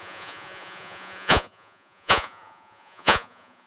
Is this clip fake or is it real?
fake